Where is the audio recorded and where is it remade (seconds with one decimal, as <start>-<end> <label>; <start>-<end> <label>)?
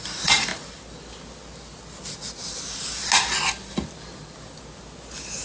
0.0-5.4 recorded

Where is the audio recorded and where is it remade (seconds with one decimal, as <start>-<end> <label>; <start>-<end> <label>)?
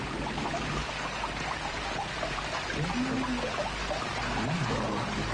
0.0-0.8 recorded; 0.8-2.4 remade; 2.4-5.3 recorded